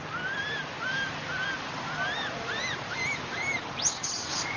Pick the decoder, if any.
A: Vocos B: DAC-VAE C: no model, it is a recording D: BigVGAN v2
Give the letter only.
C